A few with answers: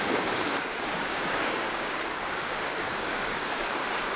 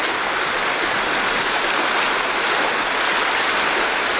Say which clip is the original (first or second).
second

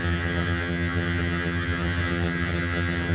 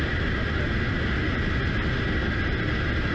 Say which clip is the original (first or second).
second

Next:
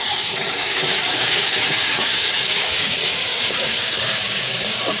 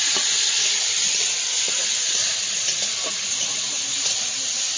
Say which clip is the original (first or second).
second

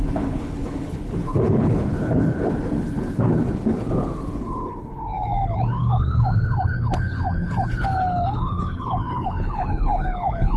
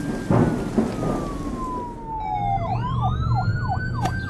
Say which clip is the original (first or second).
second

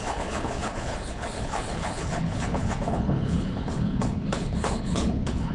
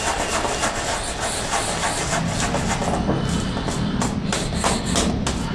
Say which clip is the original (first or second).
second